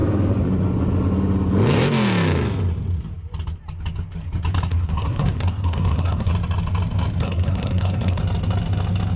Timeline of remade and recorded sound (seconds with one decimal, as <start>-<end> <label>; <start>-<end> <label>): 0.0-4.7 recorded; 4.7-6.3 remade; 6.3-7.2 recorded; 7.2-8.2 remade; 8.2-9.2 recorded